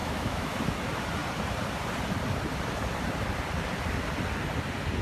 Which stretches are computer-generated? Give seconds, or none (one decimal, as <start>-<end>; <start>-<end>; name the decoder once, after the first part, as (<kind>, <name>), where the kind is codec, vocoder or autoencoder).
0.0-0.6 (autoencoder, DAC-VAE)